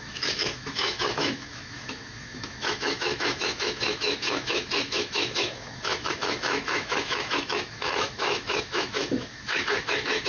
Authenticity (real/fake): fake